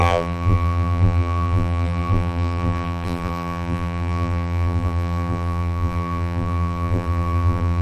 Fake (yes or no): yes